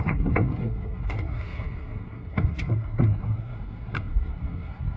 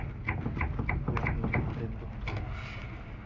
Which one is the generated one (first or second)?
first